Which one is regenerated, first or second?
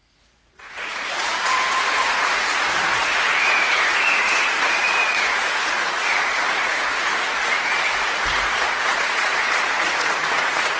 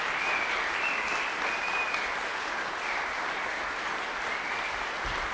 first